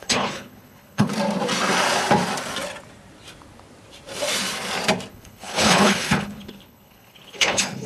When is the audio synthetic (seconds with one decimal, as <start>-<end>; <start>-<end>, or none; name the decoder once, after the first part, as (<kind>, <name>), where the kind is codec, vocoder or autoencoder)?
0.0-1.1 (codec, HILCodec); 5.1-7.9